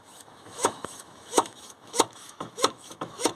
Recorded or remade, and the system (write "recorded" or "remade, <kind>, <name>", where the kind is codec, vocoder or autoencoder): remade, autoencoder, DAC-VAE